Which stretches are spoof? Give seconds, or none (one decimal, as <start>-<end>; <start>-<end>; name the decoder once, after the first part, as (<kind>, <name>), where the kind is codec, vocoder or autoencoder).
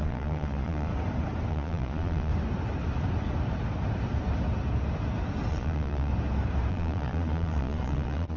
0.0-0.9 (vocoder, Vocos); 1.5-2.3; 5.5-6.1; 6.7-8.4